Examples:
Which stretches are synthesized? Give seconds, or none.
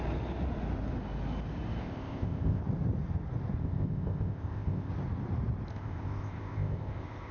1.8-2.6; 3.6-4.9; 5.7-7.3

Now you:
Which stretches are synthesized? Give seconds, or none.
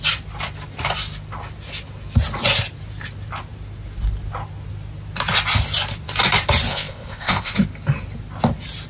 6.7-7.5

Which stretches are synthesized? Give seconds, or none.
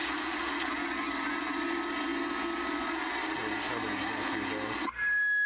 none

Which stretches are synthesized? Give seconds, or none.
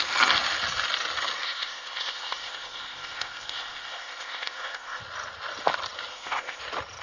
1.4-5.0; 6.1-6.6